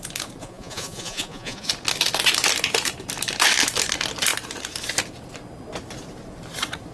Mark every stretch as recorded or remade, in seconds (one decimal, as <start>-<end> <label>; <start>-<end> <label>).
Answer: 0.0-0.4 recorded; 0.4-1.7 remade; 1.7-6.9 recorded